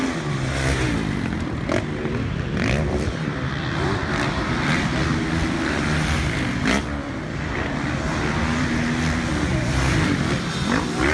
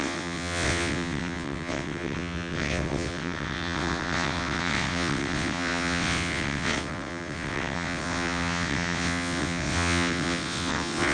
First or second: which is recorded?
first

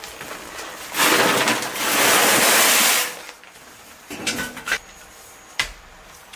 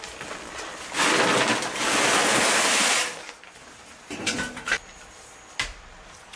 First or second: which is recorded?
first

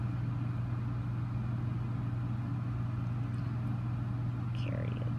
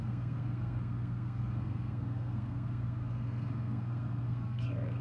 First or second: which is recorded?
first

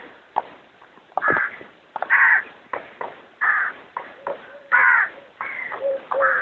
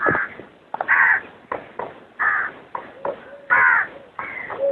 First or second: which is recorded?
second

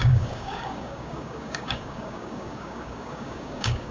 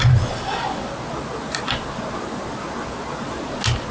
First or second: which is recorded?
second